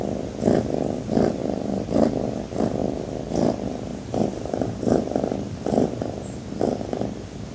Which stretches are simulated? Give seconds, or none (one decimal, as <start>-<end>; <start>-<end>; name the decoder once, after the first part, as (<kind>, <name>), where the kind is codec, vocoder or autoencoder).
1.4-2.1 (vocoder, BigVGAN v2); 3.9-6.5